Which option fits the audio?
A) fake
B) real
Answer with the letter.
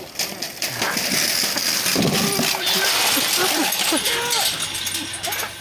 B